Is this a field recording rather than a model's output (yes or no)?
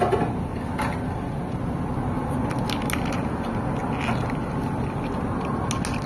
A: yes